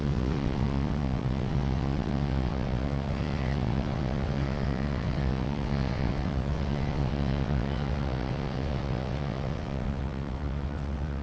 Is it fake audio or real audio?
fake